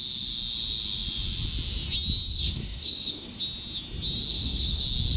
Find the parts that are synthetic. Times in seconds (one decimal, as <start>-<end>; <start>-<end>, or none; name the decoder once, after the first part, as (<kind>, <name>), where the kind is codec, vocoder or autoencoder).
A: 2.3-3.3 (codec, SNAC); 4.3-4.8